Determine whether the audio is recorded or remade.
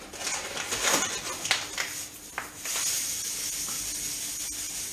recorded